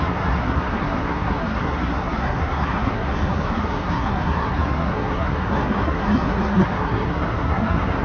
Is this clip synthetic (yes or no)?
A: yes